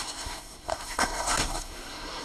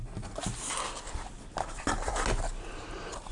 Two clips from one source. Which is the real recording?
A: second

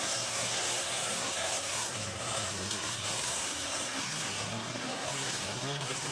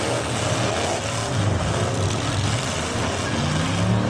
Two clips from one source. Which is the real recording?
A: second